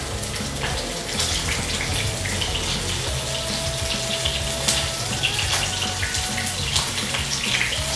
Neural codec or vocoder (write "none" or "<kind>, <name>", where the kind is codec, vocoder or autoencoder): none